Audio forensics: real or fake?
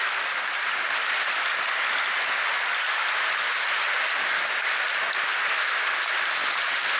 real